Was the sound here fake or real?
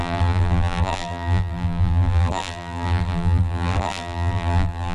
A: fake